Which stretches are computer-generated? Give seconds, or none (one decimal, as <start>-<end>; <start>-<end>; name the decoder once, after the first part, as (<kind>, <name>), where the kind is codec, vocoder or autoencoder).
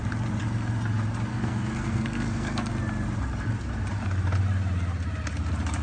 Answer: 1.3-2.7 (codec, SNAC)